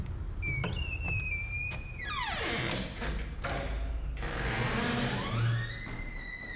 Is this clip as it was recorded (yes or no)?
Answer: yes